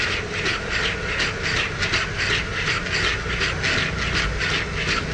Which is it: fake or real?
real